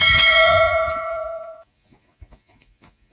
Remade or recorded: remade